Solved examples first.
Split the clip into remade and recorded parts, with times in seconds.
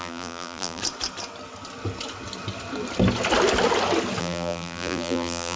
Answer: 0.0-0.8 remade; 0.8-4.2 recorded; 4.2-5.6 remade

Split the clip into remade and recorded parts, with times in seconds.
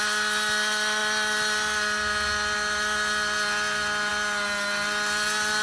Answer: 0.0-5.6 recorded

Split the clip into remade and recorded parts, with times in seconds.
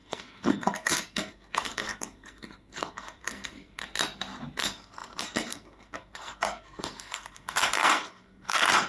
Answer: 0.0-3.8 remade; 3.8-4.6 recorded; 4.6-8.9 remade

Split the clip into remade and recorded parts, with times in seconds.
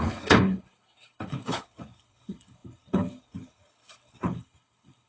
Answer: 0.0-5.1 remade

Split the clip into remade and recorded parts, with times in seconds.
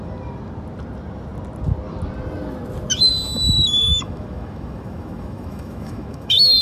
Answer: 0.0-3.8 recorded; 3.8-6.6 remade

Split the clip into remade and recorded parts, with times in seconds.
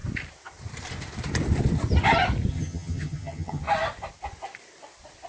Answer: 0.0-2.5 recorded; 2.5-3.6 remade; 3.6-5.3 recorded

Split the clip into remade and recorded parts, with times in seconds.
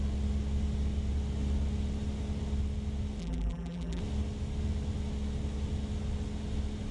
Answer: 0.0-3.2 recorded; 3.2-4.0 remade; 4.0-6.9 recorded